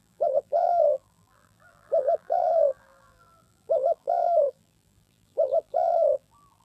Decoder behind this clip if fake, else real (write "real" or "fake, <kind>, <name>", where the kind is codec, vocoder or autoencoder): fake, vocoder, BigVGAN v2